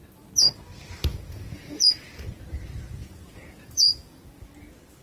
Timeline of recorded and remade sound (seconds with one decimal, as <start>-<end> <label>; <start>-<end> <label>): 0.0-1.1 recorded; 1.1-1.9 remade; 1.9-3.0 recorded; 3.0-4.2 remade; 4.2-5.0 recorded